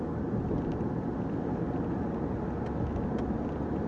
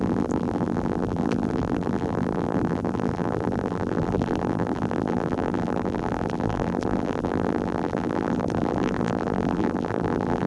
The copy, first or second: second